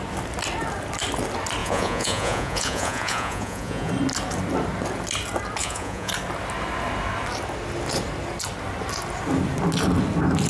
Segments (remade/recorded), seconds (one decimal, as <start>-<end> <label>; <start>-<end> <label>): 0.0-1.6 recorded; 1.6-3.9 remade; 3.9-5.6 recorded; 5.6-6.1 remade; 6.1-10.5 recorded